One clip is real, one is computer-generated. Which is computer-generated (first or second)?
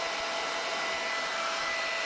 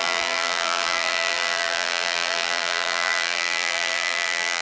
second